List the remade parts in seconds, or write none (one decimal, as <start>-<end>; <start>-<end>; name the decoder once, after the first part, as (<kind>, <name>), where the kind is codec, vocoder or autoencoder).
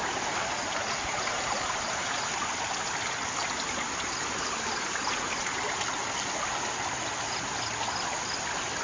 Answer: 1.1-2.3 (vocoder, BigVGAN v2); 3.4-5.8